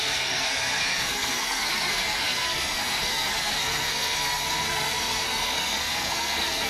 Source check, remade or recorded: remade